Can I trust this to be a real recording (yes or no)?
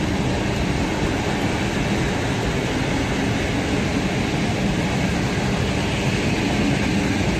yes